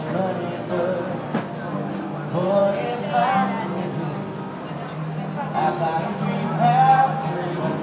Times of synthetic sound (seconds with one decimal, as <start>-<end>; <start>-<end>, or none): none